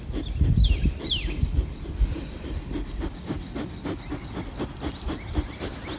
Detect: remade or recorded recorded